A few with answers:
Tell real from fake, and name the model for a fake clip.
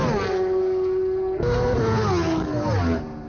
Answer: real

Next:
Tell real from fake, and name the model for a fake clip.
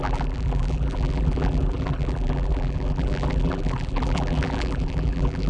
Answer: fake, vocoder, BigVGAN v2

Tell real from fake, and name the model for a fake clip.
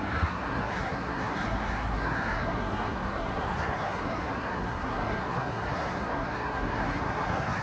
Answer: fake, codec, SNAC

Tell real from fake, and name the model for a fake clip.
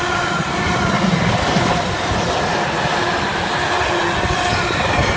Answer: real